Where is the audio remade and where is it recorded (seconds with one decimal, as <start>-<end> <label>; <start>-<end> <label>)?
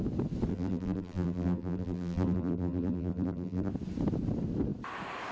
0.0-0.5 recorded; 0.5-3.7 remade; 3.7-5.3 recorded